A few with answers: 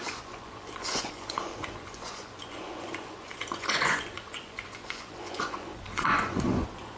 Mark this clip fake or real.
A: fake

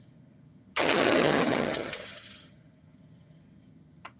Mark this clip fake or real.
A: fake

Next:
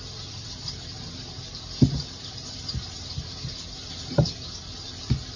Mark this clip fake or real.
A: real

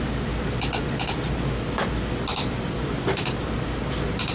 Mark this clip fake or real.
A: real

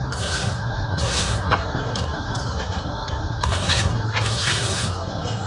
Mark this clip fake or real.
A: fake